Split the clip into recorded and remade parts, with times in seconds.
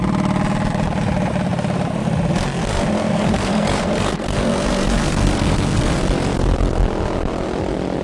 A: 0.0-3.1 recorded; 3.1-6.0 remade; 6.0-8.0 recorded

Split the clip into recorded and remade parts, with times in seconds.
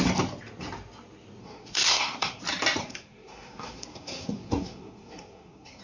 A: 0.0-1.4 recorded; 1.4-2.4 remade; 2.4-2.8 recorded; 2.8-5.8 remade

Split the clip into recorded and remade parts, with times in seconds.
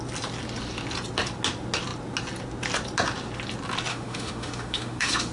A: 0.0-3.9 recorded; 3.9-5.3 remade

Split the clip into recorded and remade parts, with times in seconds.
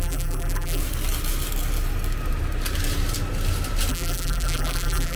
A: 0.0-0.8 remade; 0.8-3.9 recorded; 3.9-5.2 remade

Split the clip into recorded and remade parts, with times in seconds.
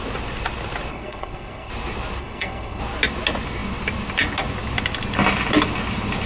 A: 0.0-0.9 recorded; 0.9-1.7 remade; 1.7-2.2 recorded; 2.2-2.8 remade; 2.8-6.3 recorded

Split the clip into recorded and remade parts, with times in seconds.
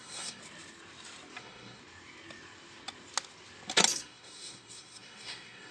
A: 0.0-0.4 remade; 0.4-1.4 recorded; 1.4-1.8 remade; 1.8-3.9 recorded; 3.9-5.7 remade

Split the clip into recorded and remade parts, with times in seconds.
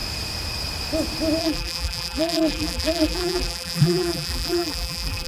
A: 0.0-1.4 recorded; 1.4-5.3 remade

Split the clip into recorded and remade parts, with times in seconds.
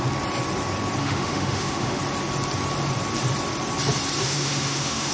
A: 0.0-1.0 recorded; 1.0-2.0 remade; 2.0-4.2 recorded; 4.2-5.1 remade